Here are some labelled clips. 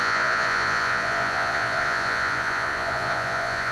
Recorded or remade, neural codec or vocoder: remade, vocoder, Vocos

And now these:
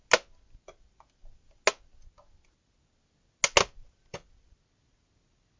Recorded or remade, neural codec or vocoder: recorded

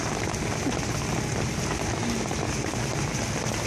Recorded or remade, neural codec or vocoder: recorded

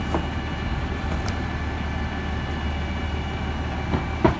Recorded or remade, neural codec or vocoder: recorded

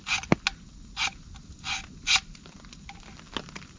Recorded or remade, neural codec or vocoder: recorded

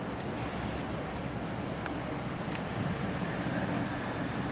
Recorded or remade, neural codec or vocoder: recorded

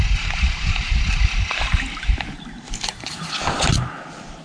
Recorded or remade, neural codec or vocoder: recorded